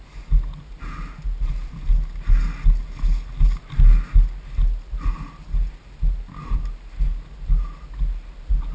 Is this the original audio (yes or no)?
yes